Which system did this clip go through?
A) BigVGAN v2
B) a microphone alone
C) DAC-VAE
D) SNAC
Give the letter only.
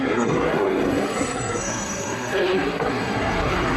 D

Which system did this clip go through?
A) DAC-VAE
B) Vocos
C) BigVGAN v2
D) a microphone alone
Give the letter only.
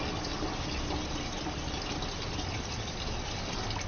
D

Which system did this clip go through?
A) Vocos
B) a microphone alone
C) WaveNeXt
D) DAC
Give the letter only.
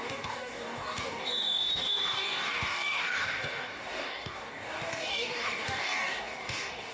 D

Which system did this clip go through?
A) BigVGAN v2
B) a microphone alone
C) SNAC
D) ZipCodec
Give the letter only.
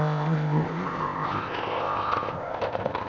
D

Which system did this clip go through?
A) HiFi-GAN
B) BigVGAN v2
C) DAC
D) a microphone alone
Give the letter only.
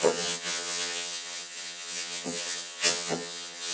A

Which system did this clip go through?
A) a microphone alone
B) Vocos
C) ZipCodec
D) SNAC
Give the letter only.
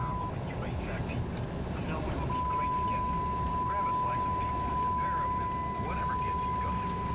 A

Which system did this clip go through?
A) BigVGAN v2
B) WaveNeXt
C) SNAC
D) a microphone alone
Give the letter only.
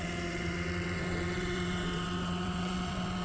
B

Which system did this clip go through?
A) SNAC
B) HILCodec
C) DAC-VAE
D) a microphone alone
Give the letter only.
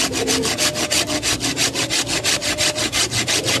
D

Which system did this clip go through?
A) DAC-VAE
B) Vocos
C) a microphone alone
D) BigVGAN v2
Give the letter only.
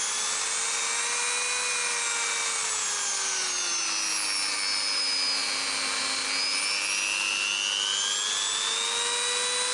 C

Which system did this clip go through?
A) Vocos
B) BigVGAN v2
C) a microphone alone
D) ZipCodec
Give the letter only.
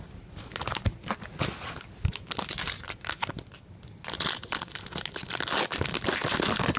C